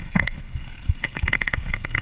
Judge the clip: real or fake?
fake